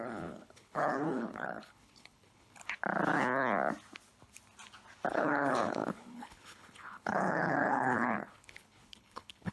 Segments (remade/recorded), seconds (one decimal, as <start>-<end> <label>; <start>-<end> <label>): 0.0-2.6 remade; 2.6-5.1 recorded; 5.1-9.5 remade